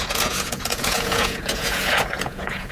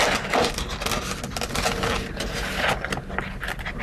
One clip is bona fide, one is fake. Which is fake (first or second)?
first